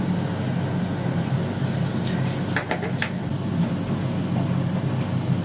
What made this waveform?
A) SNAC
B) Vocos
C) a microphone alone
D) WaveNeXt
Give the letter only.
C